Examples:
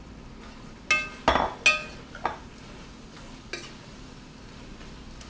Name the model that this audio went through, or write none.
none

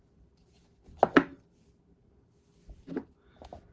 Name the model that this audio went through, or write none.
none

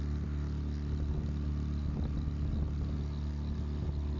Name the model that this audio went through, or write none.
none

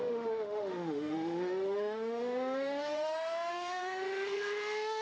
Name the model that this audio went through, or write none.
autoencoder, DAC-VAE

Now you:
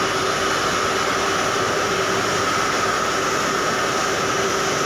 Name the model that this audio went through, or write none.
none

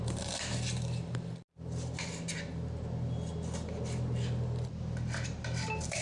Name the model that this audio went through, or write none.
vocoder, BigVGAN v2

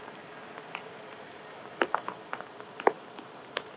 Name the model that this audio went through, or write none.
none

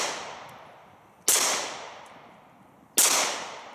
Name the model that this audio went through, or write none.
none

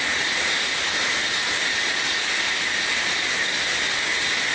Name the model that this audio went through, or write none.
none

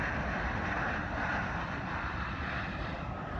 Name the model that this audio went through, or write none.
none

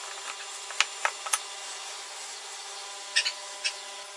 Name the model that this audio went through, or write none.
none